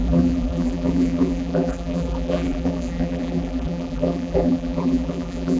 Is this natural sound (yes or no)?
no